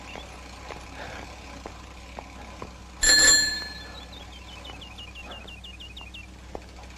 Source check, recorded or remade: recorded